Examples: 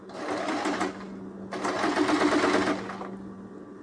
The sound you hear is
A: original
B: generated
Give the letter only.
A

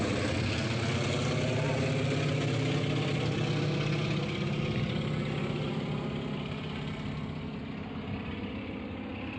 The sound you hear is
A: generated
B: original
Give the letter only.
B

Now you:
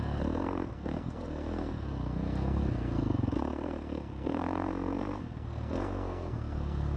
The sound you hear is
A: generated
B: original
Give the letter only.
A